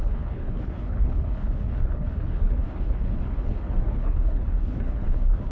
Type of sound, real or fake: fake